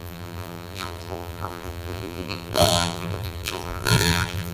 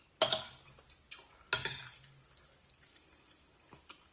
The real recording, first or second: second